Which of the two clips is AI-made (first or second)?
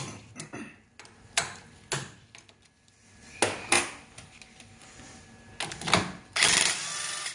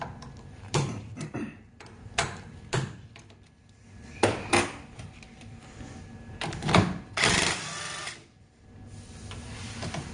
second